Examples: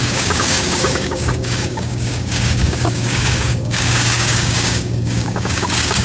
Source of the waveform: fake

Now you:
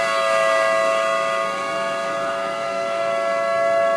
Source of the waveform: fake